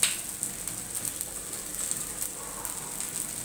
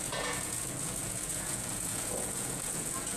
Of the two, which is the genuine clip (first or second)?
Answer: first